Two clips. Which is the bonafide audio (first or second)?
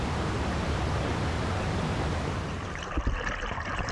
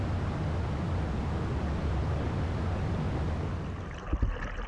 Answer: second